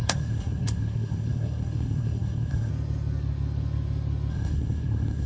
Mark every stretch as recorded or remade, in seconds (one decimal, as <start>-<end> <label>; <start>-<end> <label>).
0.0-2.7 remade; 2.7-4.3 recorded; 4.3-5.3 remade